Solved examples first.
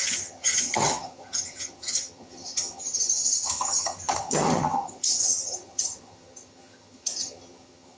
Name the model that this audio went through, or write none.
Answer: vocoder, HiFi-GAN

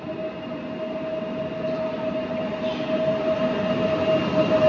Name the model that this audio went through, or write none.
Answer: none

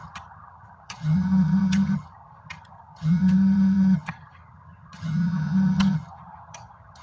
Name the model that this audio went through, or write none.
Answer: vocoder, HiFi-GAN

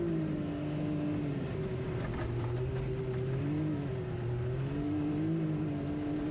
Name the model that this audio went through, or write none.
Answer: none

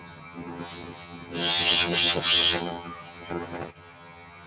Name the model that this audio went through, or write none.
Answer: vocoder, HiFi-GAN